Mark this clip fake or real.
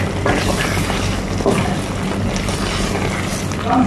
real